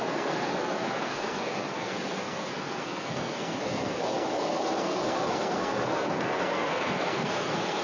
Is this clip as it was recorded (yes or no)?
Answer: no